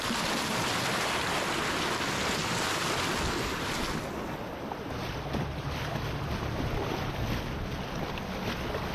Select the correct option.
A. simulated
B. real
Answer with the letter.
B